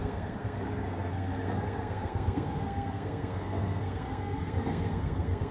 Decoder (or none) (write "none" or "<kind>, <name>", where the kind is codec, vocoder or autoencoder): codec, SNAC